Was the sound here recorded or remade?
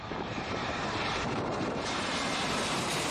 remade